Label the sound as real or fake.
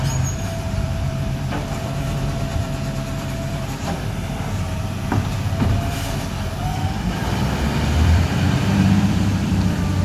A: fake